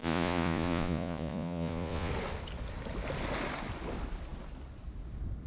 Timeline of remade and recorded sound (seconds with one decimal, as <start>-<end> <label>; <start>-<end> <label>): 0.0-2.1 remade; 2.1-5.5 recorded

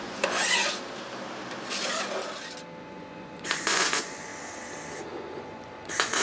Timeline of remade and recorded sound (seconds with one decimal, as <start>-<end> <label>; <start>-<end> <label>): 0.0-0.6 remade; 0.6-2.8 recorded; 2.8-4.3 remade; 4.3-5.0 recorded; 5.0-6.2 remade